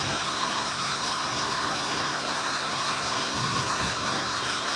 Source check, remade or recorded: remade